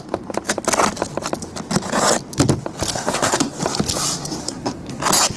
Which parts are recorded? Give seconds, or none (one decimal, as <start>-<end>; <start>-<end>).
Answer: 0.0-2.9; 3.5-4.4; 5.0-5.4